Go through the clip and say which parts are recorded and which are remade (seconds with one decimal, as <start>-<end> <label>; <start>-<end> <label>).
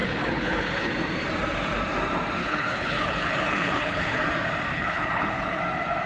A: 0.0-0.9 remade; 0.9-2.4 recorded; 2.4-4.2 remade; 4.2-4.7 recorded; 4.7-5.6 remade; 5.6-6.1 recorded